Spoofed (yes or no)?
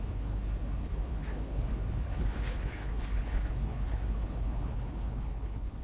yes